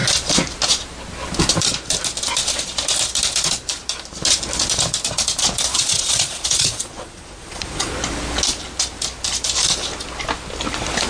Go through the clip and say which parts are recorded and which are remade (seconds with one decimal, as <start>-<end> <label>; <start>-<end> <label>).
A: 0.0-5.7 recorded; 5.7-7.9 remade; 7.9-11.1 recorded